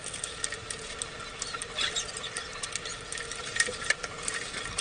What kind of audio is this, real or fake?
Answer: real